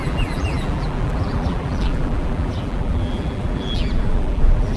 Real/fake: fake